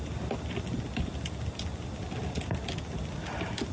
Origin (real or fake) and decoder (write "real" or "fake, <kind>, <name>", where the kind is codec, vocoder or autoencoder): real